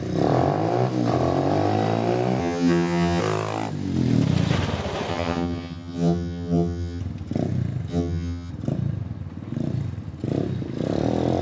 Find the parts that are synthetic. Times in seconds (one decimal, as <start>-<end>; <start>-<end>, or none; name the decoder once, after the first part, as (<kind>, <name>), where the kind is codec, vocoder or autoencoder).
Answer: 2.4-3.2 (vocoder, HiFi-GAN); 5.1-7.0; 7.9-8.5